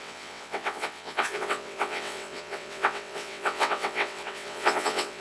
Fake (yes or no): yes